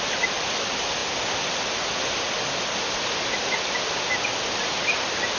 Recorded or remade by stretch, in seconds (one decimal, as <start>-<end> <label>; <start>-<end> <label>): 0.0-5.4 recorded